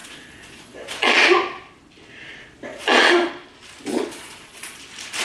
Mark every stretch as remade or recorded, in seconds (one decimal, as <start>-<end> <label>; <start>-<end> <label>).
0.0-1.3 remade; 1.3-2.7 recorded; 2.7-3.3 remade; 3.3-3.9 recorded; 3.9-4.8 remade; 4.8-5.2 recorded